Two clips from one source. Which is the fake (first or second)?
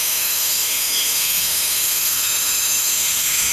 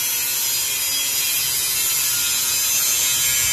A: first